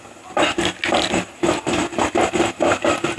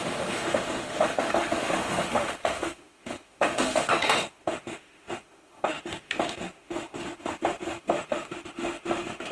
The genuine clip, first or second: first